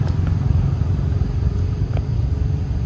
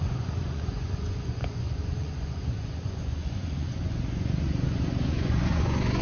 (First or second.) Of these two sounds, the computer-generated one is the second